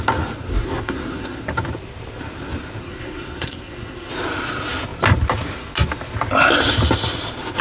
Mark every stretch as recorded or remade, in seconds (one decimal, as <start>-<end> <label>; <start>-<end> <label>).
0.0-0.5 recorded; 0.5-1.4 remade; 1.4-2.8 recorded; 2.8-4.1 remade; 4.1-7.6 recorded